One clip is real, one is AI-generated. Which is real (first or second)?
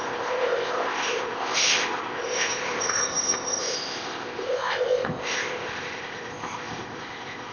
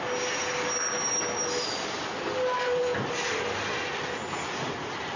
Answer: second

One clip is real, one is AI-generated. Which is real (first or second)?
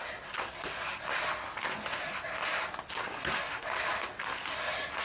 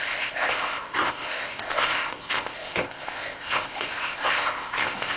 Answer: first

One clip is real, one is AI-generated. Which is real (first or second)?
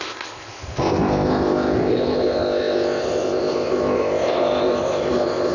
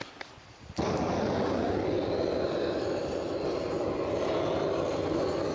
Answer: second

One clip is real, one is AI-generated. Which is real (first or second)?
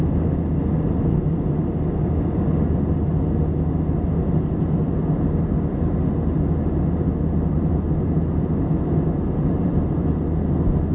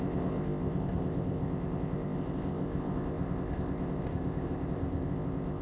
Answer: first